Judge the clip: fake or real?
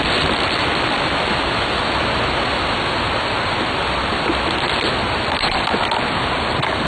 real